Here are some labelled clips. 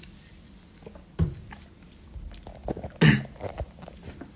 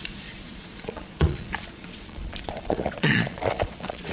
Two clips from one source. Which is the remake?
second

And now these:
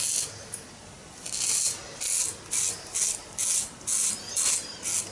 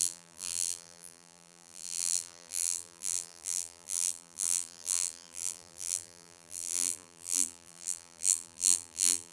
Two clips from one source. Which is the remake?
second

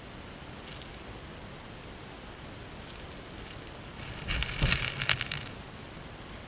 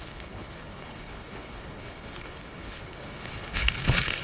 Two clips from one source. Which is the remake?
second